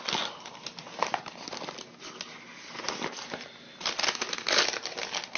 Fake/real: real